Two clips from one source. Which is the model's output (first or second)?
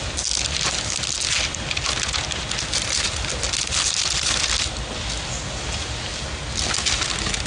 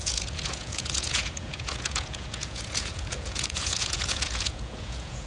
second